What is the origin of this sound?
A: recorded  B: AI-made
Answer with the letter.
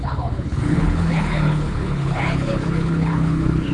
B